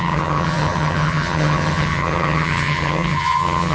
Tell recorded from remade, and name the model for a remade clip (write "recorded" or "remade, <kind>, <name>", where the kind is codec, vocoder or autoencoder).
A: remade, vocoder, HiFi-GAN